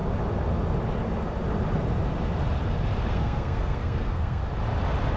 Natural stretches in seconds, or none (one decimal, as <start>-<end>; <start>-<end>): 0.0-3.1; 4.4-5.2